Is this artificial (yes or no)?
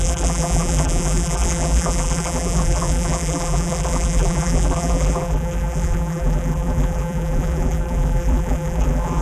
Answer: yes